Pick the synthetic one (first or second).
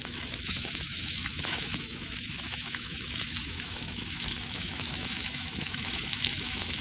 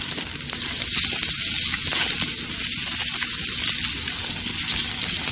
first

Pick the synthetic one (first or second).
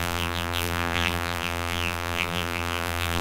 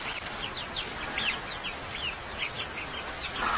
first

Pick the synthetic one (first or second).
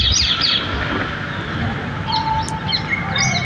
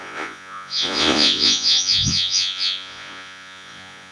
second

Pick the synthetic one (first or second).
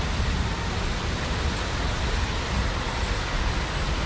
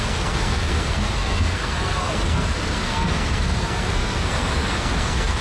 second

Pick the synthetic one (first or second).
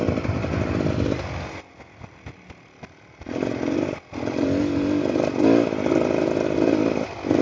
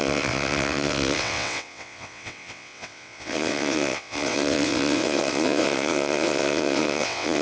second